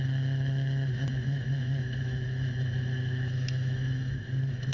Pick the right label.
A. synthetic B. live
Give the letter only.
A